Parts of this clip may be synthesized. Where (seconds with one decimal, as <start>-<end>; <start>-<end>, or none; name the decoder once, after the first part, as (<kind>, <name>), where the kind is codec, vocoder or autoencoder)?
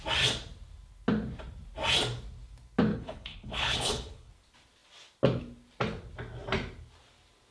2.9-4.3 (codec, HILCodec)